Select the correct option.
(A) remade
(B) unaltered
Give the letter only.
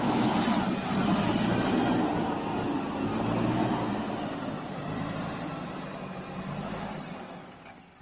B